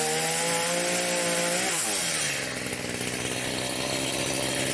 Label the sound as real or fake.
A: real